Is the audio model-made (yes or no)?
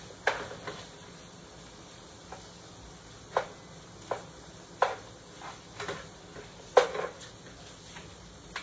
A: no